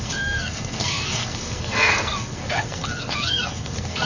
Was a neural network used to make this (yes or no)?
yes